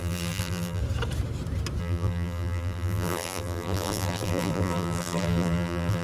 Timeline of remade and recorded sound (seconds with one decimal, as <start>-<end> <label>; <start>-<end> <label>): 0.0-0.8 remade; 0.8-1.8 recorded; 1.8-6.0 remade